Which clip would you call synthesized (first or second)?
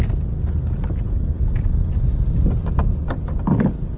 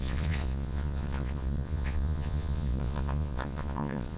second